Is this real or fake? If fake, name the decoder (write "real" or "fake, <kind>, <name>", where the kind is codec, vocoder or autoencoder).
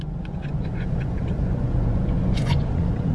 fake, vocoder, Vocos